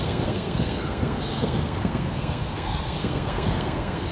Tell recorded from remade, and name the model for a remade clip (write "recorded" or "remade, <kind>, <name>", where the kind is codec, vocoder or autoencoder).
remade, codec, SNAC